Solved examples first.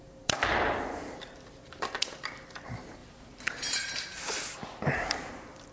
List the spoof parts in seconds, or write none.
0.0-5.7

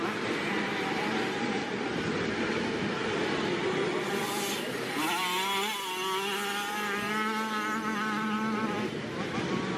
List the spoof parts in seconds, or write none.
none

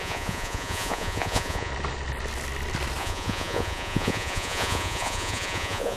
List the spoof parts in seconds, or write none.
0.0-1.7; 3.0-6.0